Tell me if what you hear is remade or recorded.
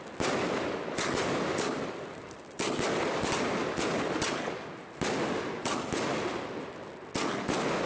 recorded